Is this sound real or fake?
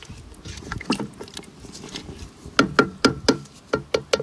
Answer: real